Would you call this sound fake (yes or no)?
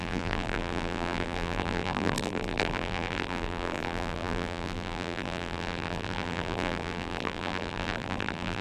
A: yes